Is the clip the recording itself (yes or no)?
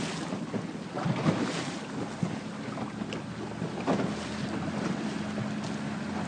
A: yes